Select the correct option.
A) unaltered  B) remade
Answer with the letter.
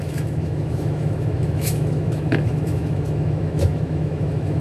B